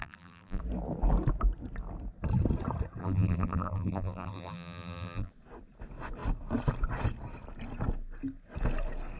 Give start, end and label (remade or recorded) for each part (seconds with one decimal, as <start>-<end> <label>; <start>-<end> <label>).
0.0-0.6 remade; 0.6-3.0 recorded; 3.0-5.3 remade; 5.3-9.2 recorded